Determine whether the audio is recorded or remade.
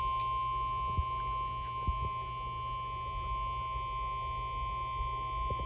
recorded